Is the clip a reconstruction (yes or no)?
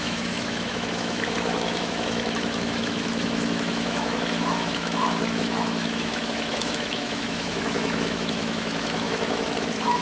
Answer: yes